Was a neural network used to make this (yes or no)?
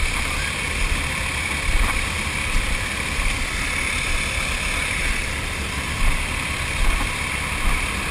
yes